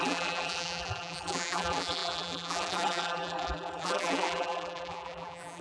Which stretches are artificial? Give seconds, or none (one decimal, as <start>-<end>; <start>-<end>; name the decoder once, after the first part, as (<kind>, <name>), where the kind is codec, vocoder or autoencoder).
0.0-5.6 (vocoder, BigVGAN v2)